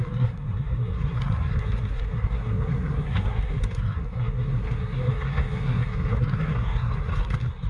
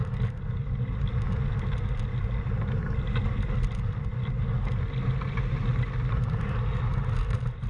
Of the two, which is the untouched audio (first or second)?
second